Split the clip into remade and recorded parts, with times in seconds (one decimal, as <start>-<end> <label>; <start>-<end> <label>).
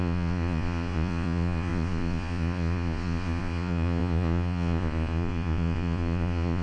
0.0-6.6 remade